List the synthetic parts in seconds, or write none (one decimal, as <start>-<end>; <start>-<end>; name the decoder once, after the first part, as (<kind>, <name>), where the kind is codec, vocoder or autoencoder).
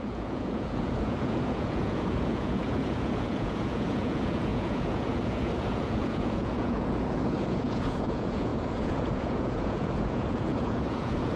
0.0-11.4 (vocoder, Vocos)